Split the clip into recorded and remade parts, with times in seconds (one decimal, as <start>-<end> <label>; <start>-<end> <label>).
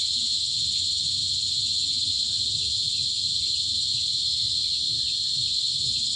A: 0.0-6.2 recorded